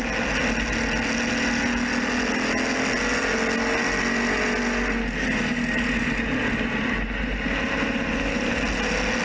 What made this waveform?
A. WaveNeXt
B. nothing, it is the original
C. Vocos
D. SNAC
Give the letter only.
B